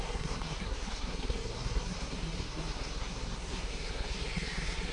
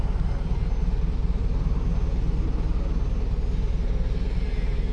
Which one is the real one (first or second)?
second